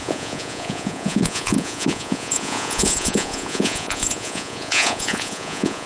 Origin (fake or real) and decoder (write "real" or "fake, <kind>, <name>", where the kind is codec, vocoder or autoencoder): fake, vocoder, Vocos